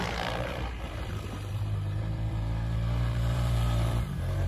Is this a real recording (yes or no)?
no